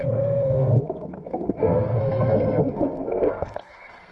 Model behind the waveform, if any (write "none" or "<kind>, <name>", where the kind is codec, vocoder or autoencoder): codec, SNAC